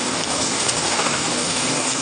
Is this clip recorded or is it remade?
remade